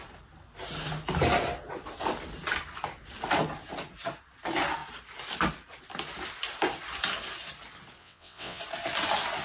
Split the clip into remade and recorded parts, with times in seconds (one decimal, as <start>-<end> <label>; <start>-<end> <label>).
0.0-8.0 recorded; 8.0-8.6 remade; 8.6-9.4 recorded